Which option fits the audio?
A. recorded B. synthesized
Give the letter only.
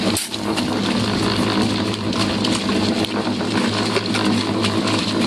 A